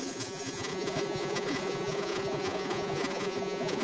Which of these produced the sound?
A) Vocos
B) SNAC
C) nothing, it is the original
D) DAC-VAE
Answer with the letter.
A